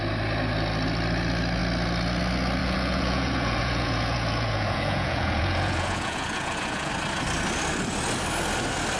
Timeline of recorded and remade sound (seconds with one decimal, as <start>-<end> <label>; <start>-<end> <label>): 0.0-2.6 recorded; 2.6-6.9 remade; 6.9-9.0 recorded